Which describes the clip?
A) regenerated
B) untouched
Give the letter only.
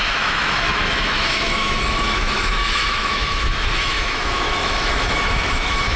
A